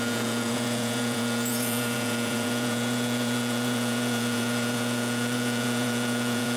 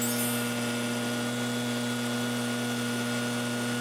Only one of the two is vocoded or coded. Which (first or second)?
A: first